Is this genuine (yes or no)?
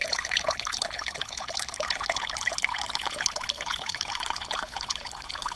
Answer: no